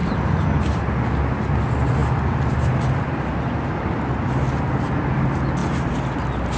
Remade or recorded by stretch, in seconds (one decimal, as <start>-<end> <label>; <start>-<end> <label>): 0.0-6.6 recorded

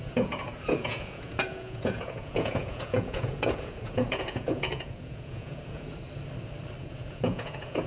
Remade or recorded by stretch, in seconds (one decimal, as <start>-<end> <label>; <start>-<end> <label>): 0.0-5.9 remade; 5.9-6.8 recorded; 6.8-7.9 remade

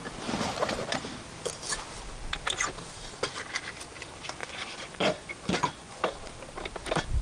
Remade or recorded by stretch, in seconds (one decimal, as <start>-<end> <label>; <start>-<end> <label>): 0.0-4.4 recorded; 4.4-6.0 remade; 6.0-7.2 recorded

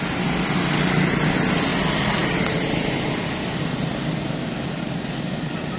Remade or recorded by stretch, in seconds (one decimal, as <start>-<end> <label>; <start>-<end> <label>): 0.0-5.8 recorded